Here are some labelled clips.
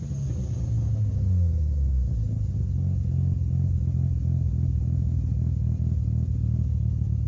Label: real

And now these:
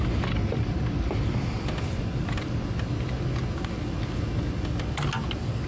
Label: real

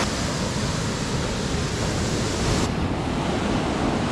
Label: real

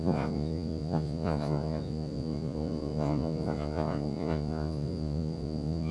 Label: fake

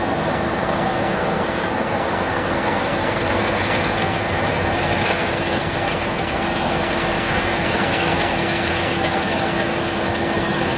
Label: fake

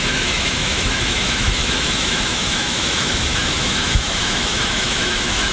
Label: fake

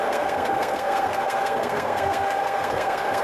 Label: fake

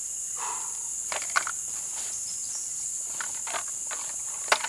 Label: real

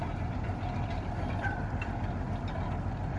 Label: real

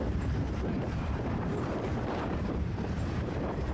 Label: fake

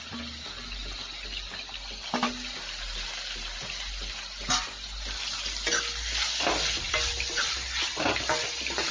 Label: real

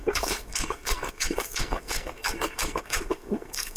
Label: fake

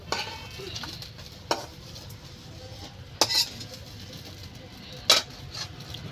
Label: real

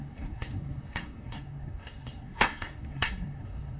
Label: fake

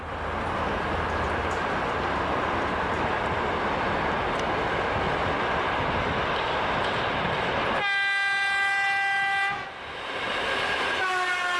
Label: real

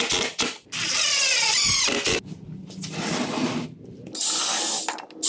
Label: real